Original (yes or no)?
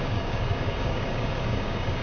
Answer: no